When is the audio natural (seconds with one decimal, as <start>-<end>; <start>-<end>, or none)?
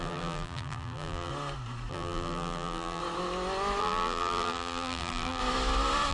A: 1.3-1.9; 3.0-3.8; 5.4-6.1